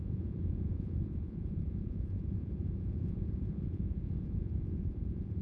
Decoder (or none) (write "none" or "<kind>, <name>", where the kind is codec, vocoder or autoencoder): vocoder, Vocos